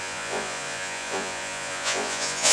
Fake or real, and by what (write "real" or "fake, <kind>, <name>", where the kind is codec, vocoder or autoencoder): fake, vocoder, Vocos